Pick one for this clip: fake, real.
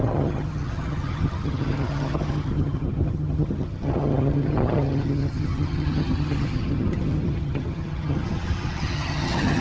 fake